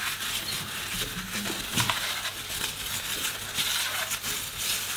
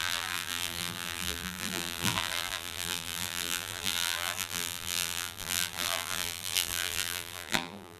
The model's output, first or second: second